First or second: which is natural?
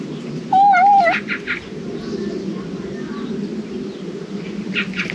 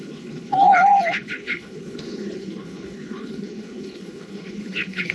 first